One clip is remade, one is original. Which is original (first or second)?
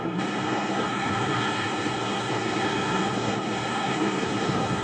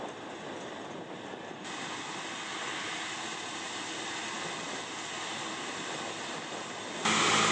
second